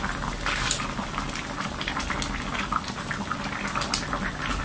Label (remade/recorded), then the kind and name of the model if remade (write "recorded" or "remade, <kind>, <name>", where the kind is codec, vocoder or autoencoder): recorded